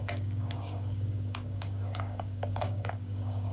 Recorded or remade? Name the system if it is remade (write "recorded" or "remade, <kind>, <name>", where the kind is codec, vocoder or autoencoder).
remade, codec, DAC